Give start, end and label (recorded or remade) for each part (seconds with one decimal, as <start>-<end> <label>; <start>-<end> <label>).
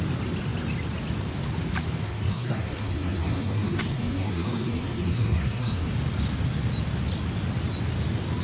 0.0-2.0 recorded; 2.0-5.9 remade; 5.9-8.4 recorded